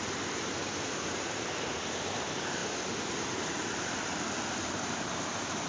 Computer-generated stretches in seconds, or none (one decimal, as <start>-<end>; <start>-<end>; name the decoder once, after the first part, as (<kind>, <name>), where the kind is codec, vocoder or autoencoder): 0.0-2.6 (vocoder, BigVGAN v2); 3.1-4.1; 4.7-5.7